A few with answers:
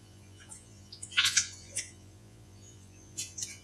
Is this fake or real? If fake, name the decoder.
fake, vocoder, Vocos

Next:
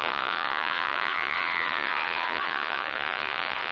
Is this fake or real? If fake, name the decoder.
fake, vocoder, Vocos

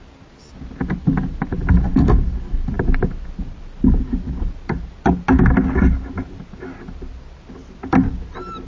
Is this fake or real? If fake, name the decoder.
real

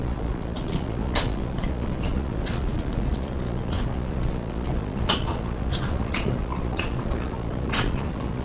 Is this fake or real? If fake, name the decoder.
fake, vocoder, Vocos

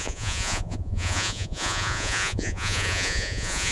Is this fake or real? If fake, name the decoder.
fake, vocoder, Vocos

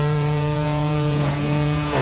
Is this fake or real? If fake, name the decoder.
fake, vocoder, Vocos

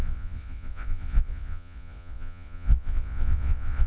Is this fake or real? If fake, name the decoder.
fake, vocoder, Vocos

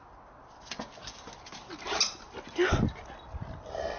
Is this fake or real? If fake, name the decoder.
real